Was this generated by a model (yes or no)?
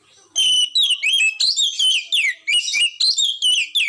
no